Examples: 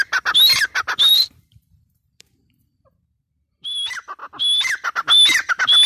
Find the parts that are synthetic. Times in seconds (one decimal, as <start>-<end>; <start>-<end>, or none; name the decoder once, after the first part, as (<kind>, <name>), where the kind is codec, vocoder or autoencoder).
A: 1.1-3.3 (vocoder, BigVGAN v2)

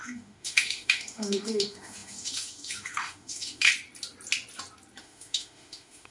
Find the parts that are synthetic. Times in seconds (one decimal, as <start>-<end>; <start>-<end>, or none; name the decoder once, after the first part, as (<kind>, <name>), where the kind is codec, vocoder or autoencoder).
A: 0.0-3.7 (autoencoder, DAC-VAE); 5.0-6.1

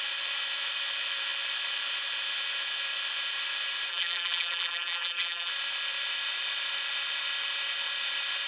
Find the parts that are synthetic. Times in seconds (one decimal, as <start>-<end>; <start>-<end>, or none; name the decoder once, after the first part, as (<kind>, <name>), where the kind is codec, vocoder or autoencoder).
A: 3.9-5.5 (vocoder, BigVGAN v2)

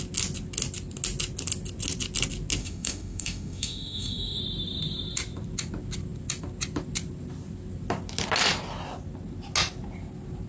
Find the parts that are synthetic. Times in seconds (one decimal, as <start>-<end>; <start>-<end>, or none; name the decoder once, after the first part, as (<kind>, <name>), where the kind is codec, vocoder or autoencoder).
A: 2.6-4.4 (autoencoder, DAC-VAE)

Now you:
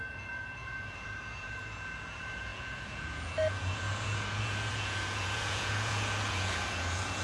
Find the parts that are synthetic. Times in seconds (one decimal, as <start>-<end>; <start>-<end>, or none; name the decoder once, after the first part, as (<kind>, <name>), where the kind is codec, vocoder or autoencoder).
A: 0.0-7.2 (vocoder, Vocos)

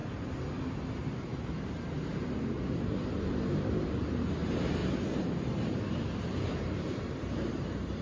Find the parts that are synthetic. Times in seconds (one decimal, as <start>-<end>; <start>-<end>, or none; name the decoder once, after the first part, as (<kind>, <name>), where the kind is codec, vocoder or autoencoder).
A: 0.5-8.0 (vocoder, BigVGAN v2)

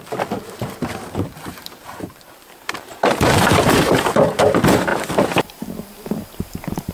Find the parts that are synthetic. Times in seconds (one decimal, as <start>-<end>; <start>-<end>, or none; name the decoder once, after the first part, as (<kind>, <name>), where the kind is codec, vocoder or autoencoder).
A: 1.6-3.9 (vocoder, BigVGAN v2)